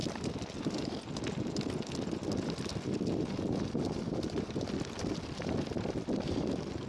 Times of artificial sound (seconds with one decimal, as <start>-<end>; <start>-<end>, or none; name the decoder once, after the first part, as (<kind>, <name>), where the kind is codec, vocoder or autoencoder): none